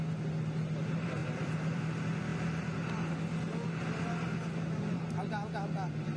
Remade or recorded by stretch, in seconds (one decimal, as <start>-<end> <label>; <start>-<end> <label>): 0.0-1.2 recorded; 1.2-1.8 remade; 1.8-6.2 recorded